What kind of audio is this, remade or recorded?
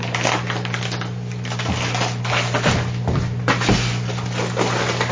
recorded